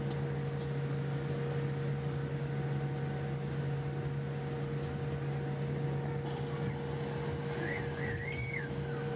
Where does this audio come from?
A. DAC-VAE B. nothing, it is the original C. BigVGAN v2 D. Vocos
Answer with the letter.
B